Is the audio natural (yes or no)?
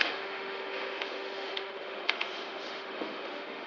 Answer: no